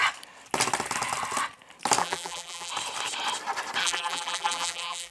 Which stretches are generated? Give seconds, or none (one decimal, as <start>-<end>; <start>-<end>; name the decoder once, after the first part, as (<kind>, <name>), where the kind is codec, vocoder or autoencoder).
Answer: 2.0-2.7 (vocoder, BigVGAN v2); 3.8-5.1